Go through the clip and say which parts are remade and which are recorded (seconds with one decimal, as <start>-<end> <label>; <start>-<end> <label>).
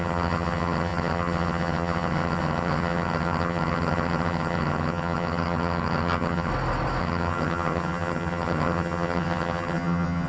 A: 0.0-6.5 remade; 6.5-7.0 recorded; 7.0-10.3 remade